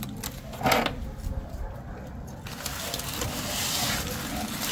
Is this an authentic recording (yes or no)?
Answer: yes